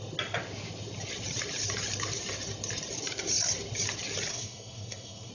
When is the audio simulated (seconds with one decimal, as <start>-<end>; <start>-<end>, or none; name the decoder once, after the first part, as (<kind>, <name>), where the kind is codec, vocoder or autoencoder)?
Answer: 4.3-5.3 (codec, SNAC)